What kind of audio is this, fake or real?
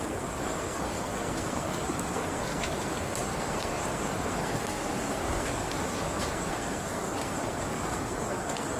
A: fake